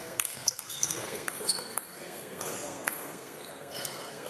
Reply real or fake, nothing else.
fake